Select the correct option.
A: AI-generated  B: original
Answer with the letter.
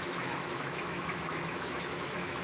A